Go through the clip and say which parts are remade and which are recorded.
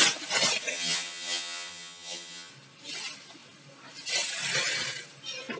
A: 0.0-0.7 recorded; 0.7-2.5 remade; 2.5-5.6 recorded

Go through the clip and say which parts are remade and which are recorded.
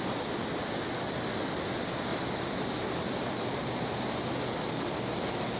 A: 0.0-5.6 recorded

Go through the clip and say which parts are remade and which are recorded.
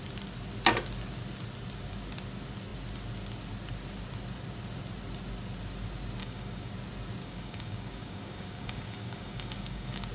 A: 0.0-6.2 recorded; 6.2-6.7 remade; 6.7-7.2 recorded; 7.2-10.1 remade